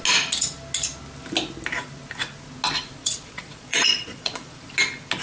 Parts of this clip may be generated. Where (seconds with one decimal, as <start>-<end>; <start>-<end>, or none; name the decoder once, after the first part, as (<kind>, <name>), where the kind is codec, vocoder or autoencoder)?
3.0-4.7 (vocoder, Vocos)